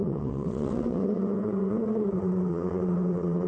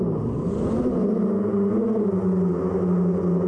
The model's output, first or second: first